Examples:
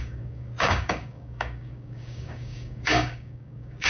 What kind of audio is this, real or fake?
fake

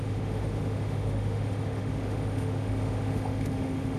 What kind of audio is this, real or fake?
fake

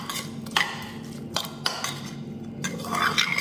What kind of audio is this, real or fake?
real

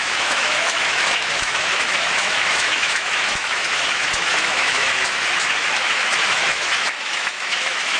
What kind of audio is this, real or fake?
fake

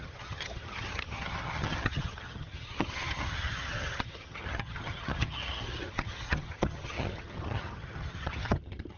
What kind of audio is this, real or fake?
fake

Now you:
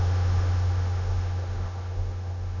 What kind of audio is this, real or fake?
fake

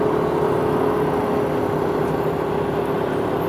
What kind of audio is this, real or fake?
real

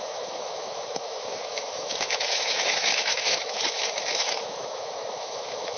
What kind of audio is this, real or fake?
fake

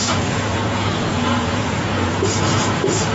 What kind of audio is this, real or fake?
fake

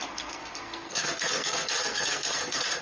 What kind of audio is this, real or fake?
fake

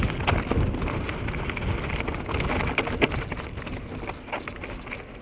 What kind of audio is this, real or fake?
real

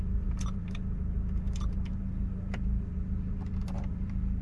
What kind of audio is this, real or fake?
fake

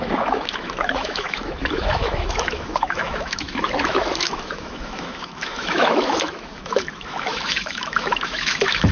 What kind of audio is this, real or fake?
fake